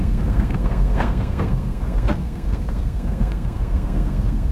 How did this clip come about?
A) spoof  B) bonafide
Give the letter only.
A